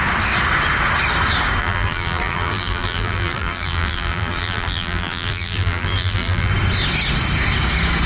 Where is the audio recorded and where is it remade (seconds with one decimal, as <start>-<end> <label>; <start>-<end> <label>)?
0.0-1.6 recorded; 1.6-6.5 remade; 6.5-8.1 recorded